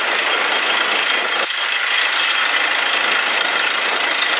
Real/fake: real